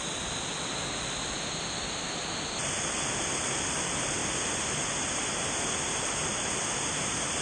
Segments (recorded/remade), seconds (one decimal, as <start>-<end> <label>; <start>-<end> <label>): 0.0-4.2 recorded; 4.2-4.7 remade; 4.7-7.4 recorded